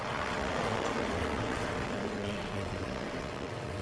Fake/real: fake